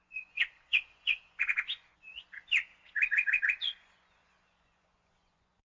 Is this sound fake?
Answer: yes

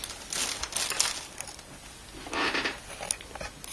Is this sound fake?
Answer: no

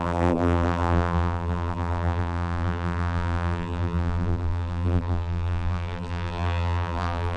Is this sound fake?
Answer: yes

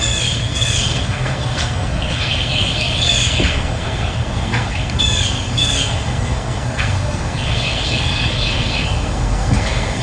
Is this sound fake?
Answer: yes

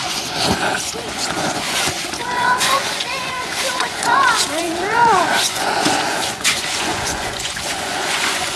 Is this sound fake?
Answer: yes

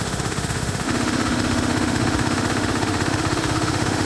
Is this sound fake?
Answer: yes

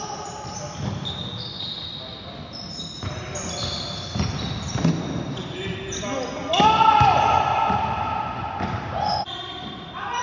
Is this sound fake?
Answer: no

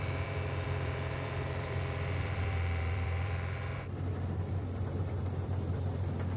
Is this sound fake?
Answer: yes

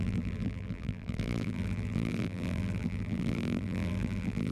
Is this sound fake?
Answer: yes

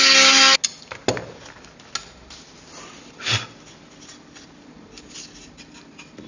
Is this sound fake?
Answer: no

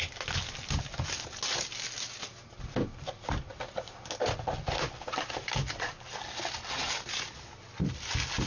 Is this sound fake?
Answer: no